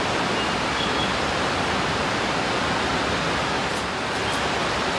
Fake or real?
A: real